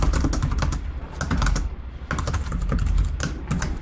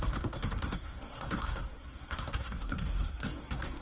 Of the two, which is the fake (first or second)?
second